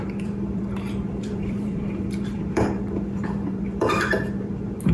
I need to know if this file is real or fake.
fake